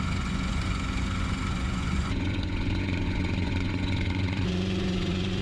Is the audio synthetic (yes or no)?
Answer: yes